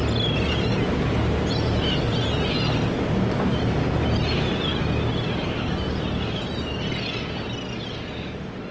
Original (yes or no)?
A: yes